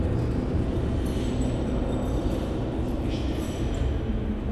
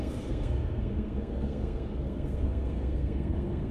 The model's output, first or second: second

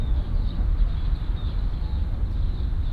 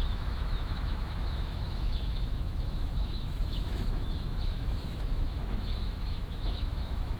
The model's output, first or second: second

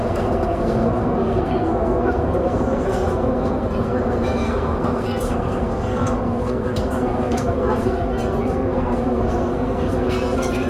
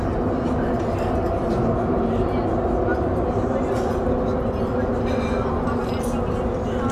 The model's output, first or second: first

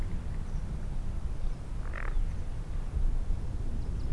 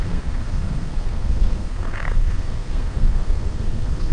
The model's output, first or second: second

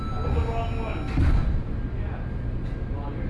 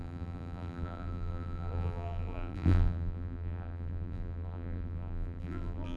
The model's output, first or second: second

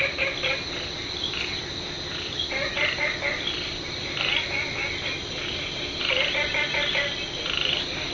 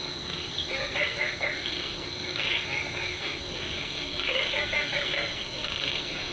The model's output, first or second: second